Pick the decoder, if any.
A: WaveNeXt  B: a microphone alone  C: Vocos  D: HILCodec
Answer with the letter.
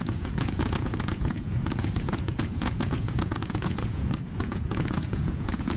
C